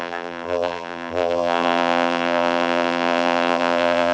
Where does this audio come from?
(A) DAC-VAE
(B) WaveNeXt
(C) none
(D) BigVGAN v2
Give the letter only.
D